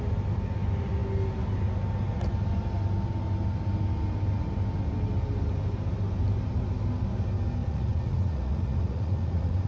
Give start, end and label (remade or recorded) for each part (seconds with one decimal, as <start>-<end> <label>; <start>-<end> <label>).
0.0-7.6 recorded; 7.6-9.7 remade